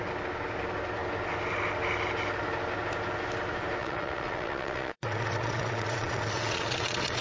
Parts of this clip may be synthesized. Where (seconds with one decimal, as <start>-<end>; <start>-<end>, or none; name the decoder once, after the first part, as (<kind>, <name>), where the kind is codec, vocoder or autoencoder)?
3.8-7.2 (vocoder, WaveNeXt)